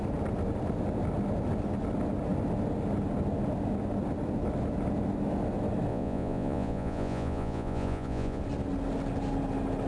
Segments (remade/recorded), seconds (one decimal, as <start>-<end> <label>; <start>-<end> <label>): 0.0-5.9 recorded; 5.9-8.4 remade; 8.4-9.9 recorded